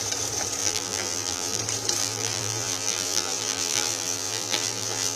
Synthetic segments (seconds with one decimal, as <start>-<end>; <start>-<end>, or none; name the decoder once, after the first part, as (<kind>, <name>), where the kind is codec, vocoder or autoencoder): 0.6-1.6 (vocoder, BigVGAN v2); 2.0-5.2